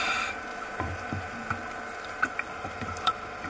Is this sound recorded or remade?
remade